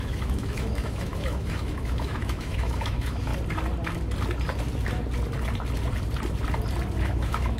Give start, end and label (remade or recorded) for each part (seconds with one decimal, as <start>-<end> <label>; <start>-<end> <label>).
0.0-3.3 remade; 3.3-7.0 recorded; 7.0-7.6 remade